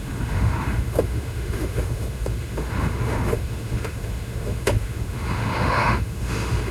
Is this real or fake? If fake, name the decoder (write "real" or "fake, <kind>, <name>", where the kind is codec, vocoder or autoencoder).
fake, autoencoder, DAC-VAE